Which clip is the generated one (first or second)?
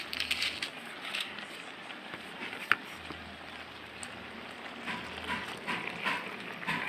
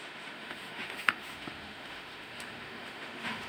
second